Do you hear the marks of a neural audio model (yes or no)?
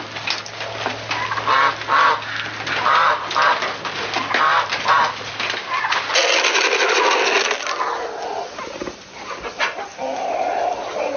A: no